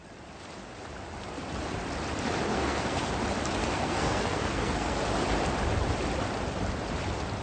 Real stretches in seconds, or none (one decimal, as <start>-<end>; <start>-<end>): 0.0-2.5; 3.1-3.6; 5.0-7.4